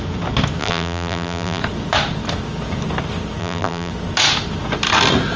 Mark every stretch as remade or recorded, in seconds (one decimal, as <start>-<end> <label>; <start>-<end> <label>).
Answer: 0.0-0.6 recorded; 0.6-1.6 remade; 1.6-3.4 recorded; 3.4-3.9 remade; 3.9-5.4 recorded

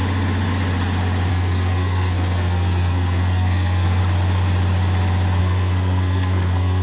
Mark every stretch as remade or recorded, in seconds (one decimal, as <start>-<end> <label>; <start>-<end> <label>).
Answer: 0.0-1.3 recorded; 1.3-4.0 remade; 4.0-5.4 recorded; 5.4-6.8 remade

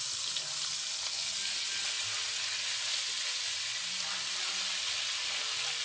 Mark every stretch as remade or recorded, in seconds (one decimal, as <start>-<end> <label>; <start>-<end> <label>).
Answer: 0.0-5.8 recorded

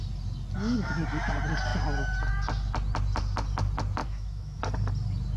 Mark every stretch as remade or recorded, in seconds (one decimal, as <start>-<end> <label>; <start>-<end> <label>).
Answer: 0.0-4.0 recorded; 4.0-4.6 remade; 4.6-5.4 recorded

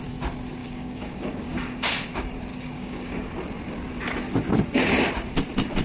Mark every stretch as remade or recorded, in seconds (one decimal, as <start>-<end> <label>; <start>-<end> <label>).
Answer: 0.0-0.6 recorded; 0.6-1.9 remade; 1.9-2.5 recorded; 2.5-3.3 remade; 3.3-5.8 recorded

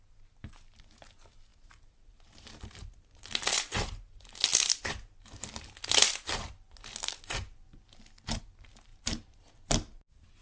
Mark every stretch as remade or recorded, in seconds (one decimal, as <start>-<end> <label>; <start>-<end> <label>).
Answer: 0.0-1.5 recorded; 1.5-3.4 remade; 3.4-8.9 recorded; 8.9-9.5 remade; 9.5-10.4 recorded